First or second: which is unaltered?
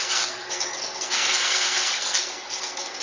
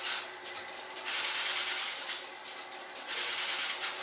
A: second